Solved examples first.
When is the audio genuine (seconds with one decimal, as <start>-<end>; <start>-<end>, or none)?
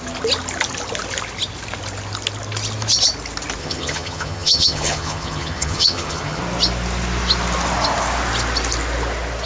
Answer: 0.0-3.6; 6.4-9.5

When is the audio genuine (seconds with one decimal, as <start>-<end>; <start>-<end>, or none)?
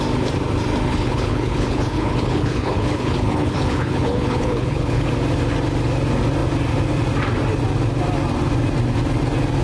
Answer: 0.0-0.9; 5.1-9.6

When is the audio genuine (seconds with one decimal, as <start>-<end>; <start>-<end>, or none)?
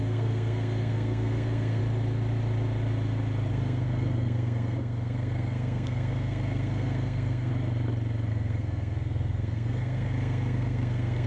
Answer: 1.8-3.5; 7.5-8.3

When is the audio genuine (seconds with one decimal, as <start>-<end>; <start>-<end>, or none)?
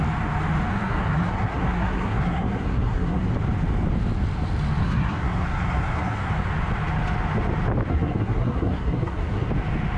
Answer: 0.0-0.7; 3.3-4.8; 6.3-7.9; 9.5-10.0